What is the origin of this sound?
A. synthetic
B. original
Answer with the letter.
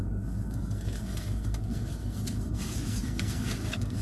A